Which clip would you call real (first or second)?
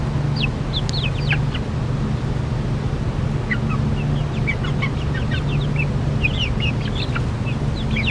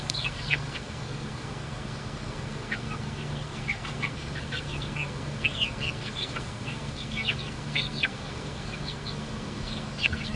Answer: first